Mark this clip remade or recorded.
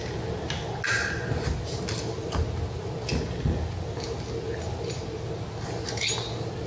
recorded